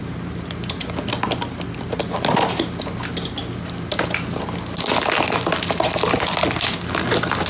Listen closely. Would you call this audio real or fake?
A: real